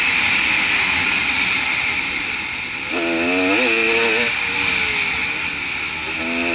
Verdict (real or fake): real